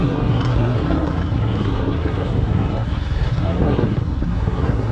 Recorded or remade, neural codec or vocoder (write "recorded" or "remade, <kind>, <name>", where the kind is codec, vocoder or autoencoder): remade, codec, SNAC